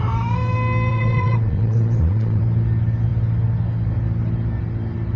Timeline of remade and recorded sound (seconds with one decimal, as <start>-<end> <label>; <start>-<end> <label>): 0.0-0.9 recorded; 0.9-2.4 remade; 2.4-5.2 recorded